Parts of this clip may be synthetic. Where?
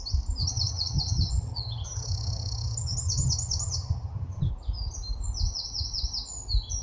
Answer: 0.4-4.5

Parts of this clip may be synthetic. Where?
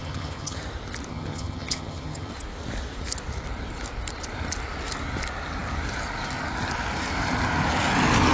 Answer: 0.0-0.6; 1.1-2.3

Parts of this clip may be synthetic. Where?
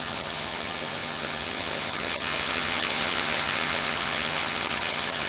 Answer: 0.0-5.3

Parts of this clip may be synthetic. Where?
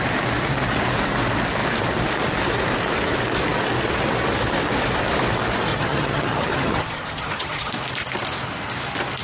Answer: 5.7-7.7